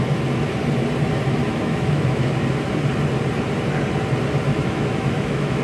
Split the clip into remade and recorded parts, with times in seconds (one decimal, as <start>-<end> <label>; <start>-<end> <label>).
0.0-1.4 recorded; 1.4-2.3 remade; 2.3-4.5 recorded; 4.5-5.6 remade